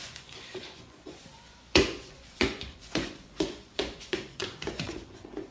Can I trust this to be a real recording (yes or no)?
no